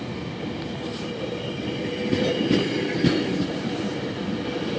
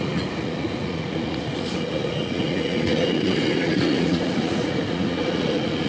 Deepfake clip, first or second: second